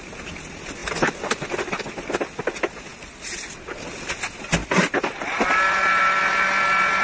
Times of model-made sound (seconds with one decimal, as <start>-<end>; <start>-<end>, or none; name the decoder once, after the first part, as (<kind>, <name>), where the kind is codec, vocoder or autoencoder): none